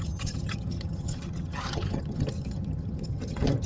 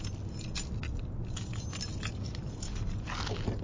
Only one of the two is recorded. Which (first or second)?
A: second